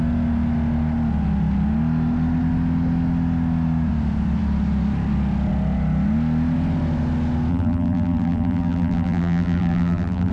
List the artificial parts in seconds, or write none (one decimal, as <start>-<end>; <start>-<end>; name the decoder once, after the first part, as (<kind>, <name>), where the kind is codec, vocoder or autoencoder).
7.5-10.3 (vocoder, BigVGAN v2)